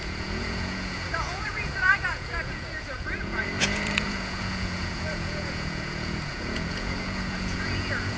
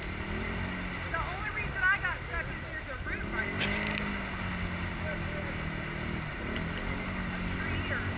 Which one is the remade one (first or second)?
first